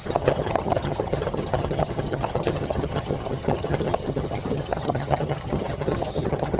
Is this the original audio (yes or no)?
no